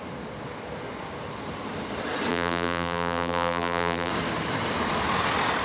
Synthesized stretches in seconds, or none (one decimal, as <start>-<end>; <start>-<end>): 2.3-4.1